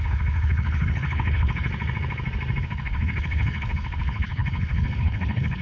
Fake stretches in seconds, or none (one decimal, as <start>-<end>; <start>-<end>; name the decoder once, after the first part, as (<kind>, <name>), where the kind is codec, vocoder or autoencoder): 0.0-1.7 (codec, HILCodec); 2.6-5.6